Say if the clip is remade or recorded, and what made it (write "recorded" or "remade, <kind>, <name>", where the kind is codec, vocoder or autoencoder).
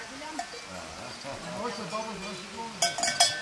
recorded